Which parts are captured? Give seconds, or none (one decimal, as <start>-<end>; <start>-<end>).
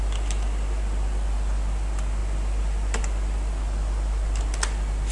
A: 0.0-5.1